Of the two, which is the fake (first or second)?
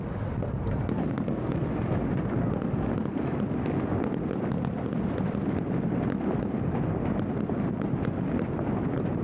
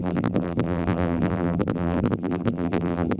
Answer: second